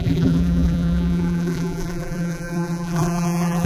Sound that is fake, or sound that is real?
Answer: fake